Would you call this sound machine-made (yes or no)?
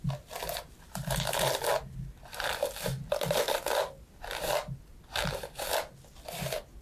no